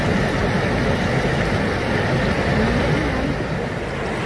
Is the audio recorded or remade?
recorded